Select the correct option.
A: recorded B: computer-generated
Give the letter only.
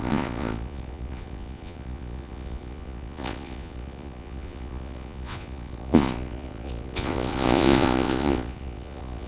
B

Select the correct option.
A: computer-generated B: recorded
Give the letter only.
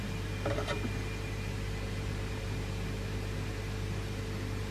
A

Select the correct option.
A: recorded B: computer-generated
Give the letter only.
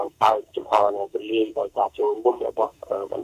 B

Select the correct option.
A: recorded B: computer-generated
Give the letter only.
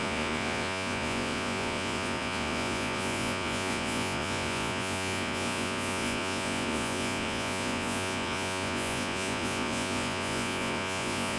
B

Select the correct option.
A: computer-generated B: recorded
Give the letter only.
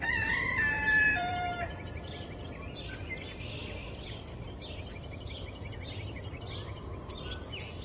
A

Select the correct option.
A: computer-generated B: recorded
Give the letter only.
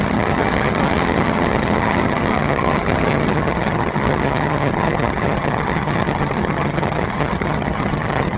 A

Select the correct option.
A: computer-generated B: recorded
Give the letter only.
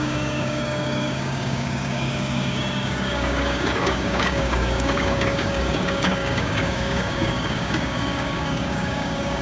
A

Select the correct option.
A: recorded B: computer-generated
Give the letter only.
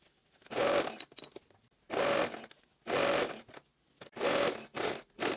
A